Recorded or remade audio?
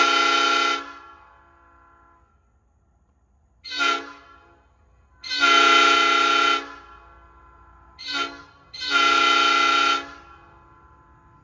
recorded